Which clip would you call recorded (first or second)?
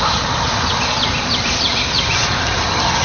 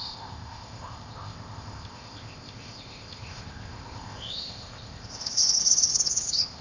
first